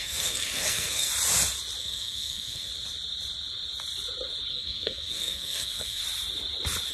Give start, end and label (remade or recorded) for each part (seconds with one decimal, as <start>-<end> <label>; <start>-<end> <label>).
0.0-1.1 remade; 1.1-1.8 recorded; 1.8-2.7 remade; 2.7-4.5 recorded; 4.5-6.0 remade; 6.0-6.9 recorded